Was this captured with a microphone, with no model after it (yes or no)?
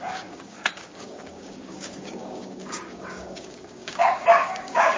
no